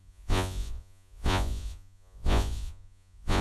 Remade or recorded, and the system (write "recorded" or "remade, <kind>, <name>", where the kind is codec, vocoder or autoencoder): remade, vocoder, Vocos